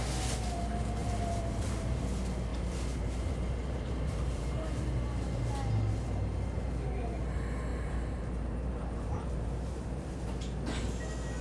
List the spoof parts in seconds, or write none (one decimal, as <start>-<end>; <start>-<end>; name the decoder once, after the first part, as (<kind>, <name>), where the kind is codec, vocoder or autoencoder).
1.0-2.0 (vocoder, BigVGAN v2); 2.5-5.4; 7.7-10.2